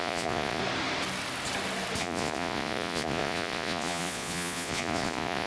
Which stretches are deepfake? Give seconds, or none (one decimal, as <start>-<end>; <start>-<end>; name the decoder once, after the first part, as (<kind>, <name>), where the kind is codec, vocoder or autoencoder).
0.0-0.6 (vocoder, Vocos); 2.0-5.5

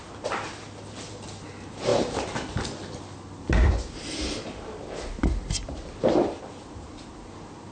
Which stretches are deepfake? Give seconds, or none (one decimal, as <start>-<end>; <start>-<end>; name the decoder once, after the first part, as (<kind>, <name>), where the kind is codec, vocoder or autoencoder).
none

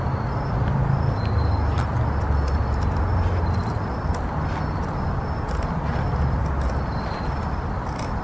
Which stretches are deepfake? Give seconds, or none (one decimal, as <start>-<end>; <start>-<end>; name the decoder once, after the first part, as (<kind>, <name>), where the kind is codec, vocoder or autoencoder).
none